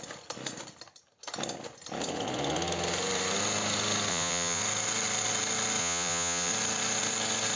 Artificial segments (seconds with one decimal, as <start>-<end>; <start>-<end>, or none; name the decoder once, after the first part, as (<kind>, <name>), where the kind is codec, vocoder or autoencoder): 4.1-4.6 (vocoder, Vocos); 5.8-6.5